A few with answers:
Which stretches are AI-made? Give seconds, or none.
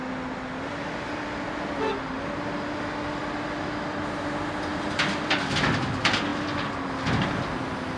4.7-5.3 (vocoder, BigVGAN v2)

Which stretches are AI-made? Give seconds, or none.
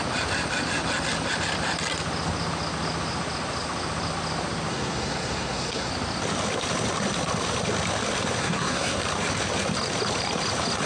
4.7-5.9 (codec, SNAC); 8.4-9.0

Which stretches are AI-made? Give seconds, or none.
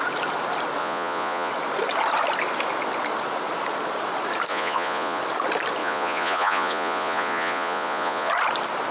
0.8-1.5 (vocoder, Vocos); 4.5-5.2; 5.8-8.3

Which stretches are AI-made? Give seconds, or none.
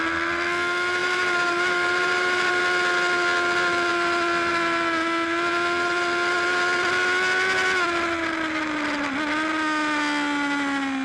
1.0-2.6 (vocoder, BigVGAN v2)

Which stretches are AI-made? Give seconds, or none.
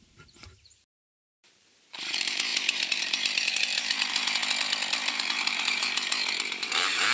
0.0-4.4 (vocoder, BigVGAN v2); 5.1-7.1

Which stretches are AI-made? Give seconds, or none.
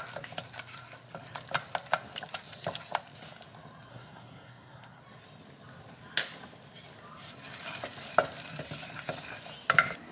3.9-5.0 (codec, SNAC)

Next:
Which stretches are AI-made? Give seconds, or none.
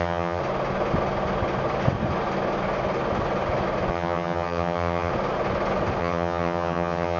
0.0-0.4 (vocoder, HiFi-GAN); 3.9-5.1; 6.0-7.2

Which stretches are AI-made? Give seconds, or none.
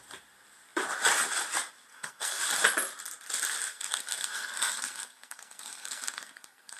1.9-2.4 (codec, SNAC); 3.7-6.8